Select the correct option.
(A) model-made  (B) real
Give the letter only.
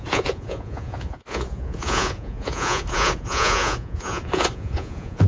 A